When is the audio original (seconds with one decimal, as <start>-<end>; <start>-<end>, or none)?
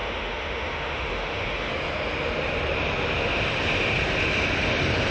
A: 1.7-5.1